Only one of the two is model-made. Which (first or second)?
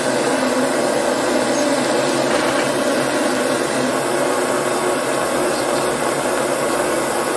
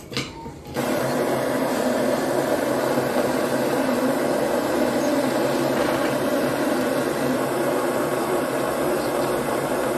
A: second